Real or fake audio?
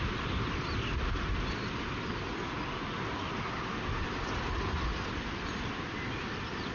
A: real